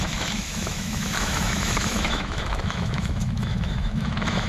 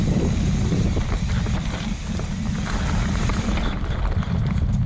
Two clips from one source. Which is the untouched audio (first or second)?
second